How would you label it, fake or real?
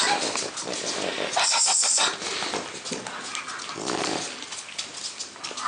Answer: real